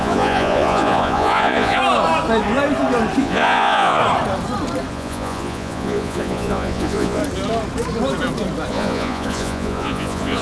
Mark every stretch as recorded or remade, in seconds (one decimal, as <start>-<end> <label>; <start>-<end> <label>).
0.0-1.8 remade; 1.8-3.2 recorded; 3.2-4.0 remade; 4.0-4.9 recorded; 4.9-7.2 remade; 7.2-8.7 recorded; 8.7-10.4 remade